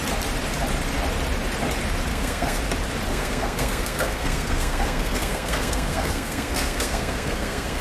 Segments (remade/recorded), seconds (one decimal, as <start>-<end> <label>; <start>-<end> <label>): 0.0-2.1 recorded; 2.1-2.6 remade; 2.6-3.1 recorded; 3.1-7.8 remade